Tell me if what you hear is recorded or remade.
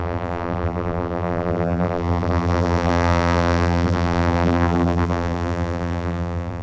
remade